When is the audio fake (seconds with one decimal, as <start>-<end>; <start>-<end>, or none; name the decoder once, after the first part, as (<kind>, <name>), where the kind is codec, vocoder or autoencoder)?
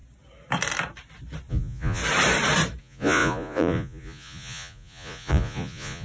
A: 1.5-2.0 (vocoder, Vocos); 2.8-6.0